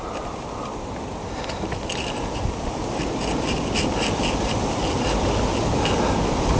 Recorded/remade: recorded